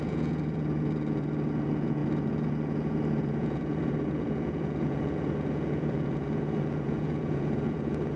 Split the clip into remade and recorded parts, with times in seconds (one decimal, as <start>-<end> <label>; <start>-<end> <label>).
0.0-8.2 remade